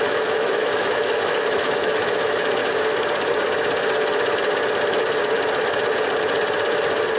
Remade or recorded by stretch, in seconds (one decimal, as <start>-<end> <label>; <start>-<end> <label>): 0.0-2.6 remade; 2.6-7.2 recorded